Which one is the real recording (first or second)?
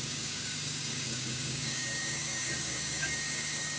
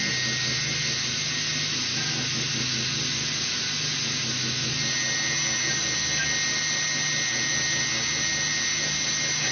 second